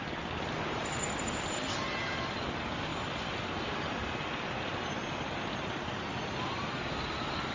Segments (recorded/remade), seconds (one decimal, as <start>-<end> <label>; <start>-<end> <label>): 0.0-0.8 recorded; 0.8-1.6 remade; 1.6-7.5 recorded